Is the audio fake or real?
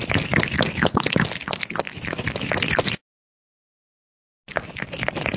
real